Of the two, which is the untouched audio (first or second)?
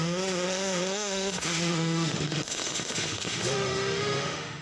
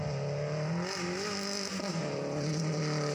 second